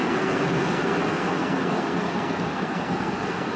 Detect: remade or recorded remade